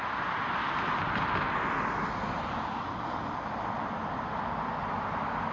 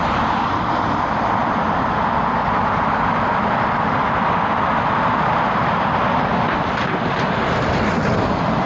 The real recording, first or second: first